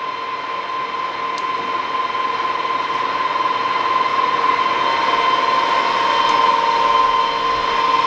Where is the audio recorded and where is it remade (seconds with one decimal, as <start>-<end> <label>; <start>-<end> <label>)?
0.0-4.1 recorded; 4.1-4.6 remade; 4.6-8.1 recorded